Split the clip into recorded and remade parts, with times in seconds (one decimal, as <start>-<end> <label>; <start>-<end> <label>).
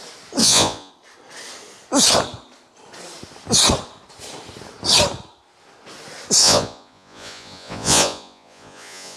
0.0-0.4 recorded; 0.4-0.9 remade; 0.9-6.4 recorded; 6.4-9.2 remade